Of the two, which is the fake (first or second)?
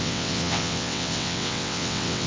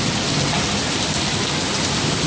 first